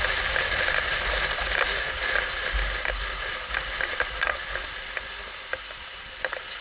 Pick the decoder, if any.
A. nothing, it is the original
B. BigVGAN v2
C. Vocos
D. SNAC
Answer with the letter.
A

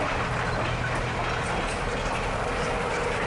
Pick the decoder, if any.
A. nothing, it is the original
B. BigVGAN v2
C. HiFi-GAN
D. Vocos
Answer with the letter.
A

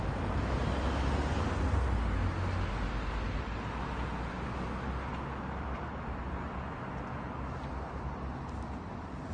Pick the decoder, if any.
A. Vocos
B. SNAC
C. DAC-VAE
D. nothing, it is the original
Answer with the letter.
D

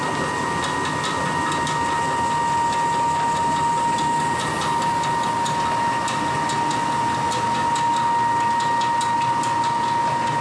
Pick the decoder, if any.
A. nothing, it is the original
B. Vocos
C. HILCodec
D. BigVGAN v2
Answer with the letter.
A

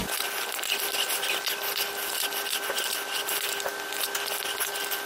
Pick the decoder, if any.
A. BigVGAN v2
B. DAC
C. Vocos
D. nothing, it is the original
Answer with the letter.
D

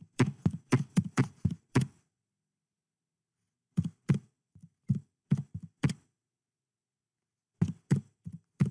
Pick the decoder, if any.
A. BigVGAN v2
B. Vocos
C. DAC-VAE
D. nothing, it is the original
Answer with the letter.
D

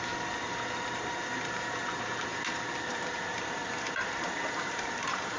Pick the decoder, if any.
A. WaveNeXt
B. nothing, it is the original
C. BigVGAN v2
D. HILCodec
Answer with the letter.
C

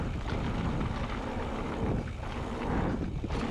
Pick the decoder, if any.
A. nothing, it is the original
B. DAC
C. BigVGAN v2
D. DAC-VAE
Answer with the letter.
A